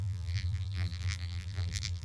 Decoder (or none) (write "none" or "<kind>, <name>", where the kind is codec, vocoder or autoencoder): vocoder, BigVGAN v2